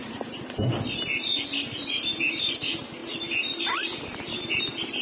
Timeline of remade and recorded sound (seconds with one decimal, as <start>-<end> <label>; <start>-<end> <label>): 0.0-5.0 recorded